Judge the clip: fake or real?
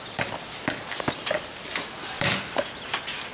real